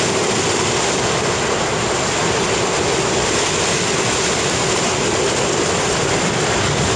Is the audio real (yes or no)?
yes